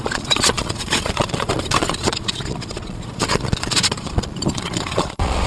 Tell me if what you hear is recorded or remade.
remade